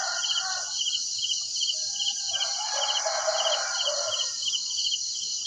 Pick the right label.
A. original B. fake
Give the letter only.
A